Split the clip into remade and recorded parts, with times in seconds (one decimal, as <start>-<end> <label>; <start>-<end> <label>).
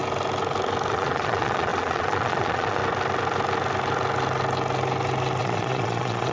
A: 0.0-0.9 recorded; 0.9-2.8 remade; 2.8-5.4 recorded; 5.4-6.3 remade